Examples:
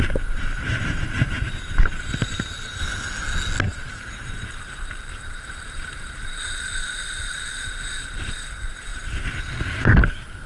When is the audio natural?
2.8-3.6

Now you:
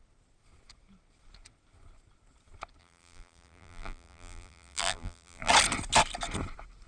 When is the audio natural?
0.0-2.8; 5.5-6.9

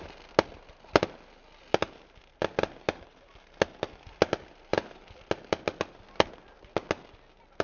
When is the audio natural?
0.0-4.7; 5.3-7.6

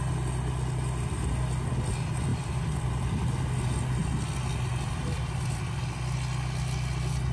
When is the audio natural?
0.0-2.3; 2.9-7.3

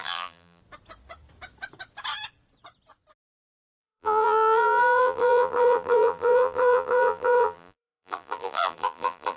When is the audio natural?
0.6-3.8

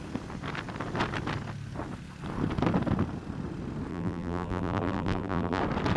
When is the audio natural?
0.0-3.9; 5.6-6.0

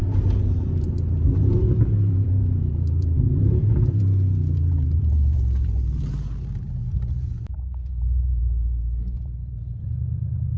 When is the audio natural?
none